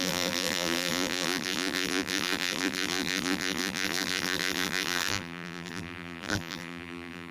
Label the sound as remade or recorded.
remade